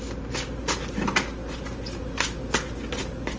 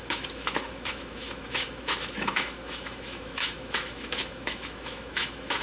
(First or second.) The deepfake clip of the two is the second